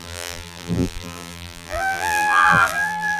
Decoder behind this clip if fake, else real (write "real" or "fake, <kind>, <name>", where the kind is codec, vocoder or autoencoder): fake, vocoder, BigVGAN v2